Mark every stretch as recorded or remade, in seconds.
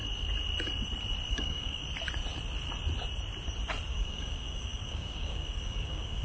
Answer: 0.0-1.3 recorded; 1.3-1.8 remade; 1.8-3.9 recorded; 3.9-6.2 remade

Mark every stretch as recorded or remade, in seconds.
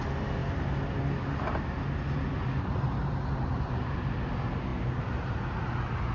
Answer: 0.0-6.1 recorded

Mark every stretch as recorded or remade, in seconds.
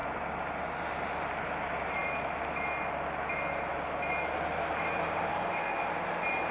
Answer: 0.0-5.3 recorded; 5.3-5.9 remade; 5.9-6.5 recorded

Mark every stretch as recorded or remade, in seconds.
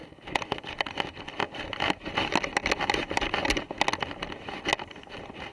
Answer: 0.0-5.5 recorded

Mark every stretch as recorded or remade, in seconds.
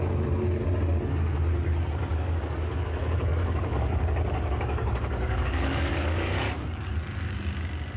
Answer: 0.0-2.1 recorded; 2.1-6.9 remade; 6.9-8.0 recorded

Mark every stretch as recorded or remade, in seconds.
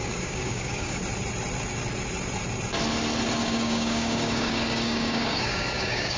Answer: 0.0-1.0 remade; 1.0-3.4 recorded; 3.4-6.2 remade